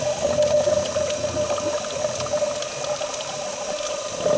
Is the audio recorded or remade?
recorded